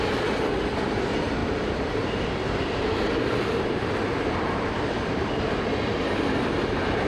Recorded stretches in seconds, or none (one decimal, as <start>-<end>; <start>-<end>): 0.0-1.4; 5.7-7.1